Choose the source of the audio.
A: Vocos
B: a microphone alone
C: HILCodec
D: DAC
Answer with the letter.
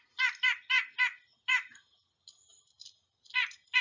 B